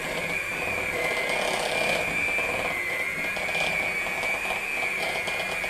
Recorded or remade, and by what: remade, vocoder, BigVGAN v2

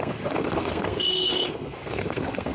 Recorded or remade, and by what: remade, codec, SNAC